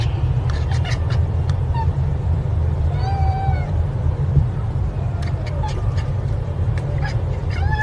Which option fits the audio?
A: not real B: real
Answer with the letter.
A